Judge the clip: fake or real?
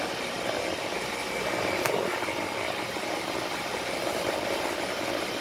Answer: fake